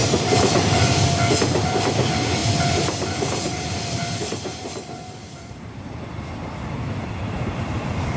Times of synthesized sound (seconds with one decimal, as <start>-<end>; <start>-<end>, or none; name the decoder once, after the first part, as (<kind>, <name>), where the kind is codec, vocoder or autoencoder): 0.0-0.5 (vocoder, BigVGAN v2); 2.4-6.0